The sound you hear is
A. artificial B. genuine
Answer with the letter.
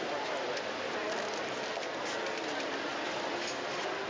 B